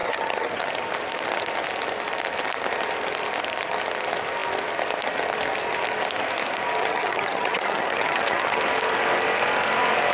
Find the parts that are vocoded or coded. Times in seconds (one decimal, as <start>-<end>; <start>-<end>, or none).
0.0-0.6; 6.8-8.6